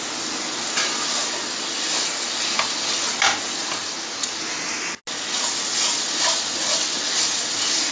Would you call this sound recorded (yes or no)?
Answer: yes